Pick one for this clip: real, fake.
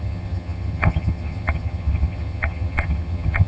fake